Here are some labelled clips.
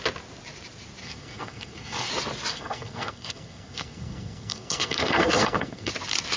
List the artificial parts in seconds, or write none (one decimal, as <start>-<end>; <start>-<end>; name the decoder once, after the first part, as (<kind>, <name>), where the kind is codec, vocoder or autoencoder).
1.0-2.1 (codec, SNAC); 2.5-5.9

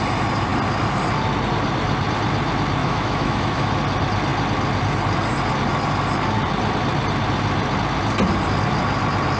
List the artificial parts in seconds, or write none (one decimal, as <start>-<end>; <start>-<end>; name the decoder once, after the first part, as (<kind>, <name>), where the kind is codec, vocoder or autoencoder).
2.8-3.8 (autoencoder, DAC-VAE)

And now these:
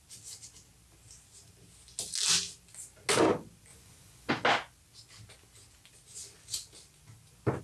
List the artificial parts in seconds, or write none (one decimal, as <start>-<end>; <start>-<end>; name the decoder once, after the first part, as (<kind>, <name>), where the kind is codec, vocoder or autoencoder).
3.7-4.3 (vocoder, Vocos)